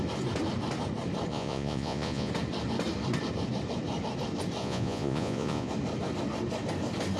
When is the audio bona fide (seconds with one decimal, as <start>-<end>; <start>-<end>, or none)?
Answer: 0.0-1.3; 2.3-4.6; 5.7-7.2